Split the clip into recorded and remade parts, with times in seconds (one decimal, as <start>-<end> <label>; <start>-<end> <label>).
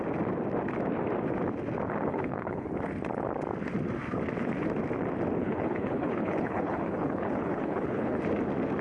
0.0-2.1 recorded; 2.1-2.7 remade; 2.7-5.4 recorded; 5.4-8.2 remade; 8.2-8.8 recorded